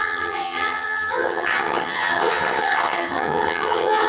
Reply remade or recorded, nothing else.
remade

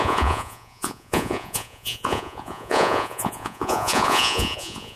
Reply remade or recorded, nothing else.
remade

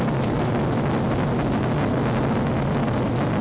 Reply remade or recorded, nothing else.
recorded